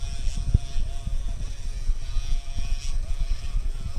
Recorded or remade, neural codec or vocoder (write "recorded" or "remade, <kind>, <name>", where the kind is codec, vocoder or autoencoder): recorded